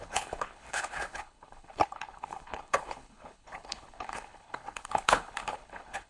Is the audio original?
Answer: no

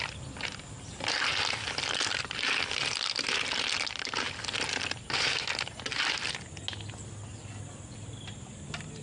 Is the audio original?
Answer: yes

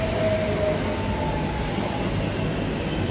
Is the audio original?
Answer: yes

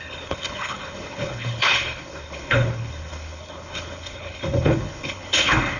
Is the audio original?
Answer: no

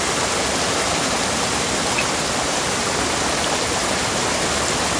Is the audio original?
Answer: yes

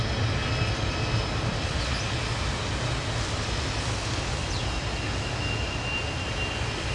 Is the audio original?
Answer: yes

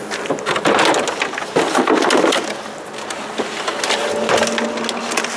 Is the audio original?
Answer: yes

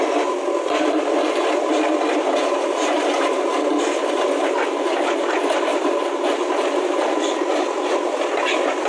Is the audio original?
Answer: yes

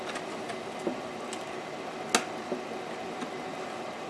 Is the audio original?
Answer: yes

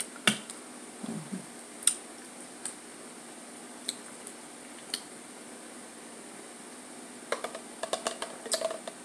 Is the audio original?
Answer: yes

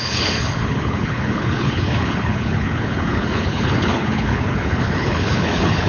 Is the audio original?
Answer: no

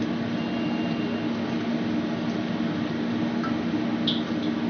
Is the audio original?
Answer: yes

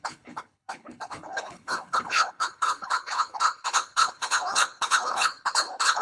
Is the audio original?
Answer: no